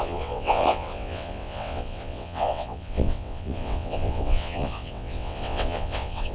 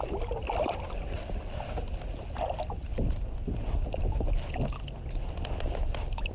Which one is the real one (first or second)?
second